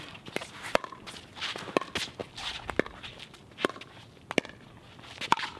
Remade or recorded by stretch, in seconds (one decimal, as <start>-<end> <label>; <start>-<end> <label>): 0.0-0.4 recorded; 0.4-1.0 remade; 1.0-5.6 recorded